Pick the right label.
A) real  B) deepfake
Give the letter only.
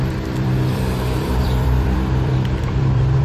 B